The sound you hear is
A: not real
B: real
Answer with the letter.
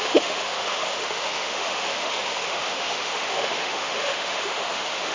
A